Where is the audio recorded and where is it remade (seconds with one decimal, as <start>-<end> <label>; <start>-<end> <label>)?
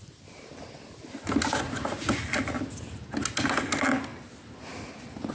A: 0.0-5.3 recorded